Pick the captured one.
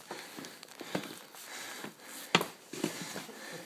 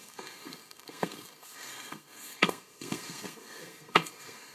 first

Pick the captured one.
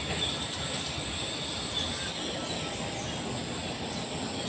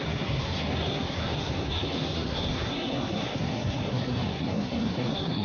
first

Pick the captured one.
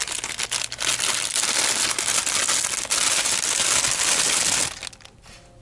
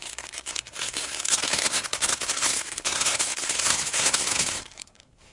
first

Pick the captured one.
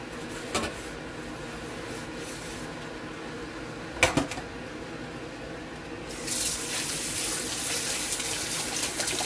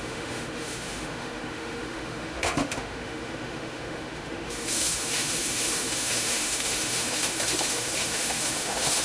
first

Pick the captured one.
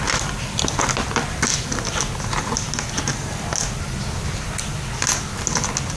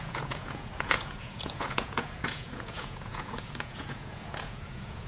first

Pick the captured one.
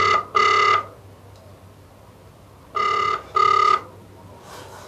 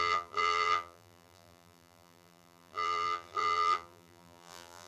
first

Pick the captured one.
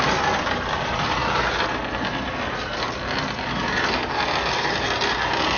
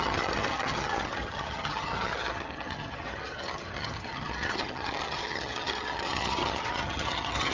first